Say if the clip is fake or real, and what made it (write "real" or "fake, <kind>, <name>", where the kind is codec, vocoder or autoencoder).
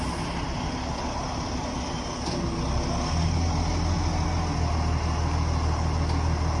real